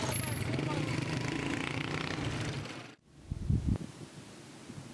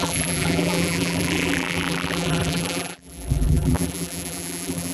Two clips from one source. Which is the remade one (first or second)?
second